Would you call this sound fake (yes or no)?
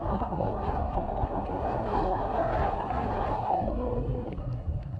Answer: yes